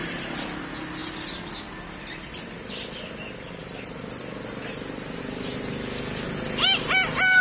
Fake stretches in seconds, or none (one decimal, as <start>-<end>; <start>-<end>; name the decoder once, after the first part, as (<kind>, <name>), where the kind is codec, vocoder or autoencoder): none